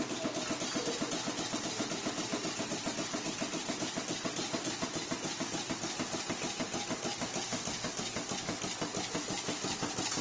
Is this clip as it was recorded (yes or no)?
yes